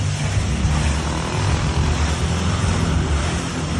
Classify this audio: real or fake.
real